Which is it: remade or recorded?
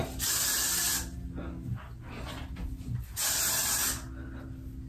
recorded